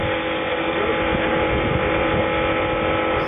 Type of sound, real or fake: real